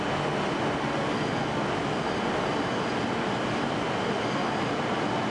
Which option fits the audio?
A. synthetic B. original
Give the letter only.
B